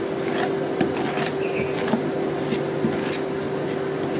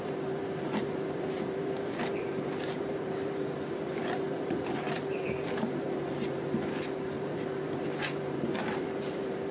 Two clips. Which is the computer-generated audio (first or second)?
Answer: second